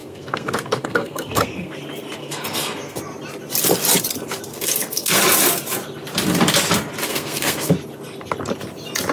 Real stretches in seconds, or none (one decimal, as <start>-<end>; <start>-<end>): 1.8-2.2; 3.0-4.5; 5.2-7.1; 7.7-9.1